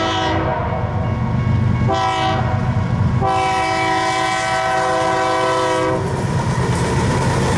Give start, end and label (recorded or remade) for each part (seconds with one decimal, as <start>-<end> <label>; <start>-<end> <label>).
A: 0.0-7.6 recorded